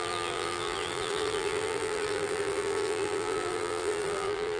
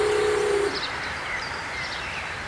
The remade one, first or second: first